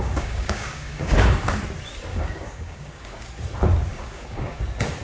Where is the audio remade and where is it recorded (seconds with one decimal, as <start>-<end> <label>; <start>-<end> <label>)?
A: 0.0-1.6 remade; 1.6-2.1 recorded; 2.1-3.3 remade; 3.3-3.9 recorded; 3.9-4.6 remade; 4.6-5.0 recorded